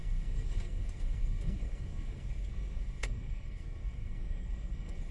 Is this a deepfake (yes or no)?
yes